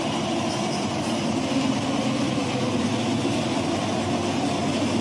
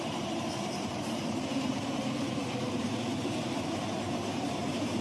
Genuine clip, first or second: first